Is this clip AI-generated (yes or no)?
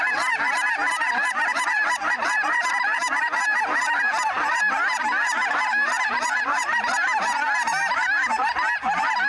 no